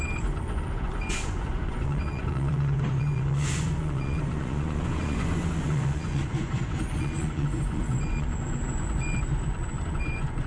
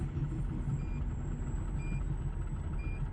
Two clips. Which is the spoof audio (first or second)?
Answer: first